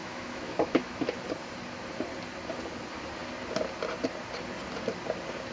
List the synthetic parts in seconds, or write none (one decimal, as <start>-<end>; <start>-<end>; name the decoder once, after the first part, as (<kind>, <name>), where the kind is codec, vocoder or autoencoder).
0.0-1.0 (autoencoder, DAC-VAE)